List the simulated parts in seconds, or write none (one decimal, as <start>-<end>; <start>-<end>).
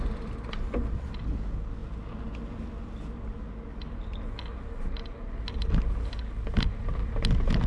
none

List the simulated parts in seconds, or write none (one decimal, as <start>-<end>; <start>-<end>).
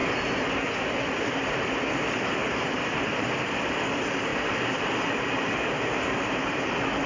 2.4-3.5; 4.3-6.6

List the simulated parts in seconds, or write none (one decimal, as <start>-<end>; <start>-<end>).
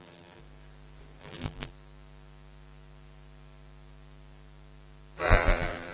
0.0-0.4; 1.2-1.7; 5.2-5.9